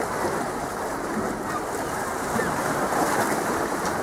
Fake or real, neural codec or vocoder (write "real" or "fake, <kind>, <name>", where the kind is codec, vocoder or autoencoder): real